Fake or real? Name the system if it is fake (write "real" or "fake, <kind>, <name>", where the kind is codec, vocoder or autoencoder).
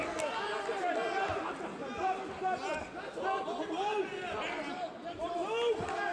real